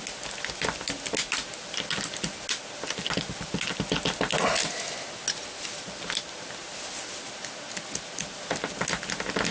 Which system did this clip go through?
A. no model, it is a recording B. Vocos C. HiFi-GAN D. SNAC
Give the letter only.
A